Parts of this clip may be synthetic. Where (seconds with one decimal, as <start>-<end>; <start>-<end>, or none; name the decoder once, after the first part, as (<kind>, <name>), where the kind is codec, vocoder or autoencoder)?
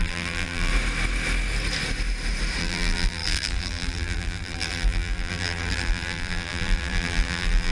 0.0-0.7 (vocoder, BigVGAN v2); 2.6-7.7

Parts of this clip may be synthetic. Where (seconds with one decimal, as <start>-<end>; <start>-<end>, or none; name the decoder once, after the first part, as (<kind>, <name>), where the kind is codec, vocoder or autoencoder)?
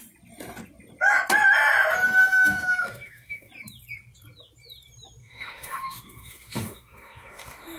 2.2-3.5 (autoencoder, DAC-VAE); 5.2-7.8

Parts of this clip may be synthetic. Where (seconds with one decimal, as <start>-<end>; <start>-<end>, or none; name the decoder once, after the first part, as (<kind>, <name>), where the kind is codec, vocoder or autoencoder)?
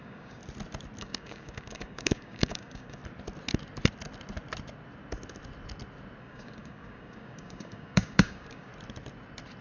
0.0-0.4 (codec, DAC); 1.0-3.0; 6.2-8.7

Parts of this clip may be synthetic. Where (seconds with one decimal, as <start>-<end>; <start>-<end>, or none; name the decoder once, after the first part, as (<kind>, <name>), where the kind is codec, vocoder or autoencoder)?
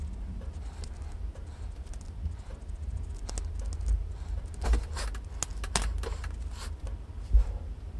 none